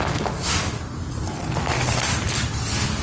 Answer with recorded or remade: recorded